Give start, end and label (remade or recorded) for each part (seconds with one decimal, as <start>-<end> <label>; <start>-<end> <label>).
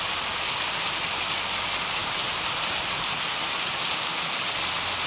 0.0-2.0 recorded; 2.0-3.2 remade; 3.2-5.1 recorded